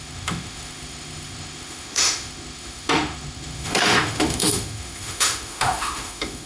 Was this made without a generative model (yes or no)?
no